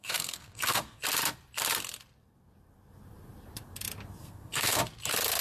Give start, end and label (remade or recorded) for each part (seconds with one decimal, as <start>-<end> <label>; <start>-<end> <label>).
0.0-1.0 remade; 1.0-4.2 recorded; 4.2-4.8 remade; 4.8-5.4 recorded